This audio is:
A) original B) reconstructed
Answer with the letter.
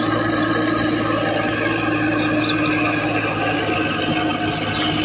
A